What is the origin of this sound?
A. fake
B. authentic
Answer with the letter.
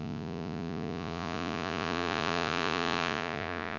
A